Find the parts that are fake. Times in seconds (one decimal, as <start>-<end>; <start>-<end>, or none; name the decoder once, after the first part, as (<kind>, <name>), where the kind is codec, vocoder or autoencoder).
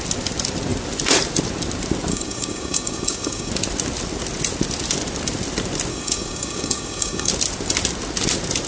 2.1-3.5 (codec, DAC); 5.9-7.3